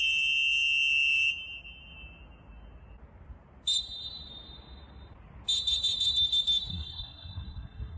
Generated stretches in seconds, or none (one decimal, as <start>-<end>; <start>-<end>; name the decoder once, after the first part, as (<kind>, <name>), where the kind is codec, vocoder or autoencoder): 6.7-8.0 (codec, SNAC)